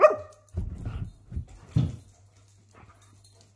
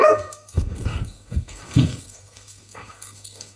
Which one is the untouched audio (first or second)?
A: first